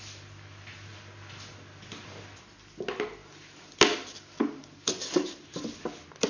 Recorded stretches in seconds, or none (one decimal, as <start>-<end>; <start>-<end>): 0.0-6.3